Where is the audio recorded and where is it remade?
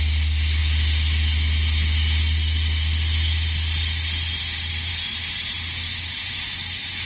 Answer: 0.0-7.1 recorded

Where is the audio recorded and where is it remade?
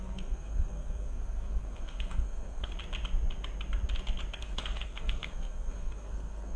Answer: 0.0-2.7 remade; 2.7-4.4 recorded; 4.4-6.6 remade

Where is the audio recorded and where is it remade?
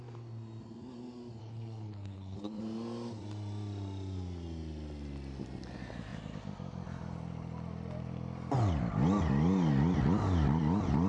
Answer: 0.0-1.4 recorded; 1.4-2.6 remade; 2.6-11.1 recorded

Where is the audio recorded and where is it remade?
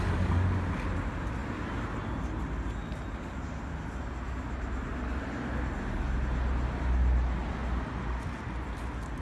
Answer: 0.0-9.2 recorded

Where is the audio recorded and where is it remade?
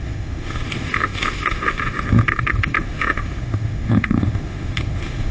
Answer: 0.0-5.3 remade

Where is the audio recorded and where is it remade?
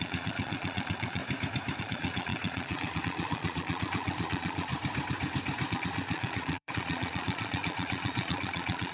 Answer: 0.0-1.2 remade; 1.2-1.8 recorded; 1.8-4.7 remade; 4.7-5.7 recorded; 5.7-8.9 remade